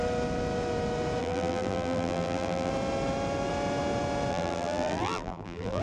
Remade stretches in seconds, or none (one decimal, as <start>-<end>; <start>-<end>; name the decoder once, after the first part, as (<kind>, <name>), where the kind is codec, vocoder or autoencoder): 1.2-2.7 (vocoder, BigVGAN v2); 4.3-5.8